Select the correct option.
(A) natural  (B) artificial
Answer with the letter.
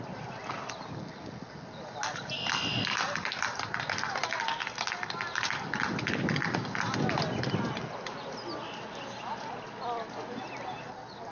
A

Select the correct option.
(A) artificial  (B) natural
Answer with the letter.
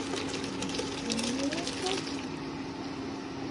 B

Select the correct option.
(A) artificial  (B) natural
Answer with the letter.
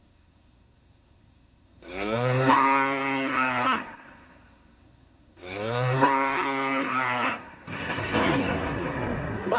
A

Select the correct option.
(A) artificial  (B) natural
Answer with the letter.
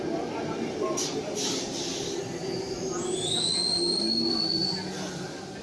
B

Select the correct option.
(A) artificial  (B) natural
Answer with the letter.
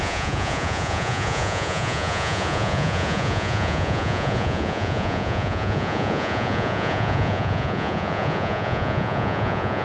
A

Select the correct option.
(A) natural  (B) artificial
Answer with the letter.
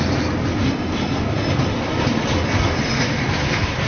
A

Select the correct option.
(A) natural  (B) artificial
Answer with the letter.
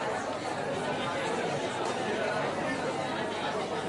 A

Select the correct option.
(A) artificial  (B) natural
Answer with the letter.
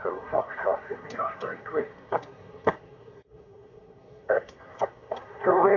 A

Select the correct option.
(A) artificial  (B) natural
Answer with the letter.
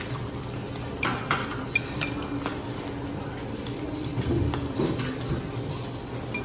B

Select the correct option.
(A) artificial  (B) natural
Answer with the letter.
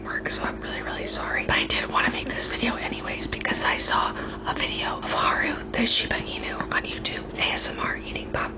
B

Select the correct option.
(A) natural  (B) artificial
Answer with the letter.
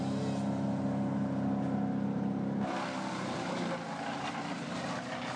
A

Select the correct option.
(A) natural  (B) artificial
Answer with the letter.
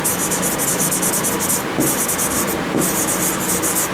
A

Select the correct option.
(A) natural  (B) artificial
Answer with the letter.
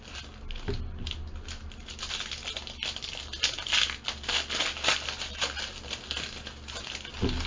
A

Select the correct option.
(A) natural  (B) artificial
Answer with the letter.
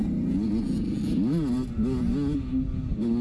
A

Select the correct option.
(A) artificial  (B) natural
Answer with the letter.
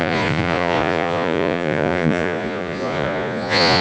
A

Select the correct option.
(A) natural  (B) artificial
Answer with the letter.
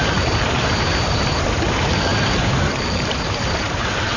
B